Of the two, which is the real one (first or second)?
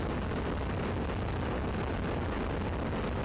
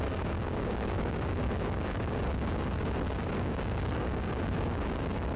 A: first